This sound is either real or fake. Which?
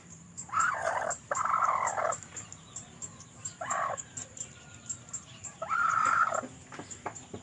fake